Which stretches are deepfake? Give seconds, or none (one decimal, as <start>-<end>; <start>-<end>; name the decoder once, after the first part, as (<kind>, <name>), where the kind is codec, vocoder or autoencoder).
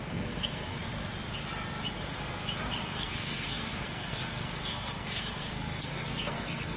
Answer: 0.0-0.8 (codec, SNAC); 2.8-6.8